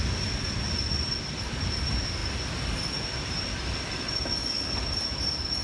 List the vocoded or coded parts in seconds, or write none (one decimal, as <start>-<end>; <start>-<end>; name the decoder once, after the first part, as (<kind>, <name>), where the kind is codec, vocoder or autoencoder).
none